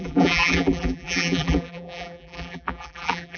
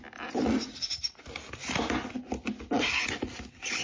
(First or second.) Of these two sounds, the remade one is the first